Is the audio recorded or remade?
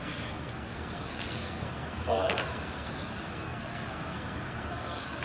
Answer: remade